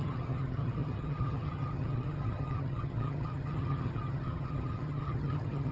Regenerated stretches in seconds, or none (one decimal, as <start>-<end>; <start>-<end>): 0.0-5.7